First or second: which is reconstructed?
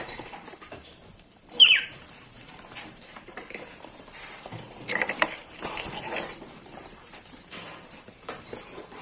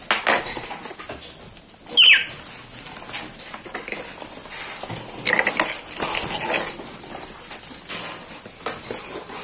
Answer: first